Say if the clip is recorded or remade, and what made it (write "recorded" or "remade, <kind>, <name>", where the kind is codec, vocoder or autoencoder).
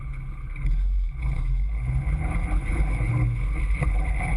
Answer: remade, codec, HILCodec